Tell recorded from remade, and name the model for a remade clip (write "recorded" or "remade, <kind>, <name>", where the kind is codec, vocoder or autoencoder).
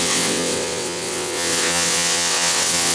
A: remade, vocoder, WaveNeXt